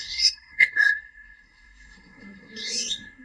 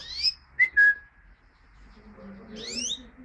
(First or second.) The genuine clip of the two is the second